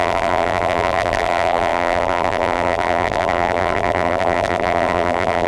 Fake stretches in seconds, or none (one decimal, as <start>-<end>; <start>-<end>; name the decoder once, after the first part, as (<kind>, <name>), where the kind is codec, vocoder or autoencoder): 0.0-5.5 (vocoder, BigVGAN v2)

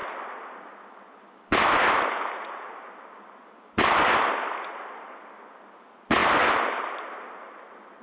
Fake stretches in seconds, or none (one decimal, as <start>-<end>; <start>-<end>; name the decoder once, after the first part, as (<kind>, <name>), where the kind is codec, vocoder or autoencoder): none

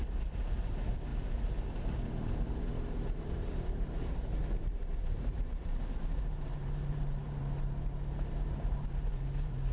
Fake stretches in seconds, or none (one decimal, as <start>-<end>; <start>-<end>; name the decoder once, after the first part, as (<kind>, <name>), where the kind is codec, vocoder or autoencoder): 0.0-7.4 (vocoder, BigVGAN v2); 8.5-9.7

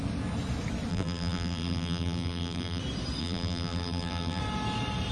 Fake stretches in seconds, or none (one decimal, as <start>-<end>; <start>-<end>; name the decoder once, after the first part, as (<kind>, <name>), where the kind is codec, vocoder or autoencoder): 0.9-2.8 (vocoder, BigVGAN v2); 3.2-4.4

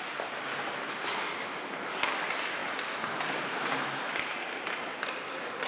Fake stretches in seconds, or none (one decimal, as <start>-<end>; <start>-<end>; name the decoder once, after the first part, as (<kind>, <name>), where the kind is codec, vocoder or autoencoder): none

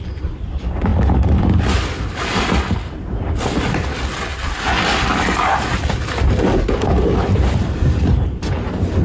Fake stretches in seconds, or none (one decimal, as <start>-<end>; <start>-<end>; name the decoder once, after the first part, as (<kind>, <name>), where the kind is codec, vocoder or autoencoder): 0.0-9.0 (vocoder, BigVGAN v2)